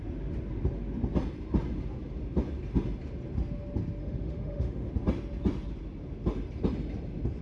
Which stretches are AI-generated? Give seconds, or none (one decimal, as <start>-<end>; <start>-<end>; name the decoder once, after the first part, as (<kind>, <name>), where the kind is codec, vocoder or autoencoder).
4.0-4.9 (autoencoder, DAC-VAE)